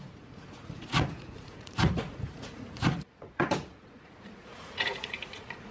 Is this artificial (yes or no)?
yes